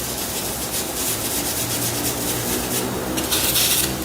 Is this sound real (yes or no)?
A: yes